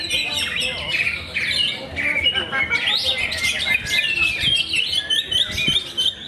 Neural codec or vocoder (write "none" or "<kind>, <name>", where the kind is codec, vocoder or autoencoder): none